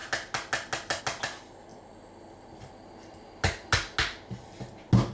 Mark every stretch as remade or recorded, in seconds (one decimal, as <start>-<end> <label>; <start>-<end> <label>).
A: 0.0-5.1 recorded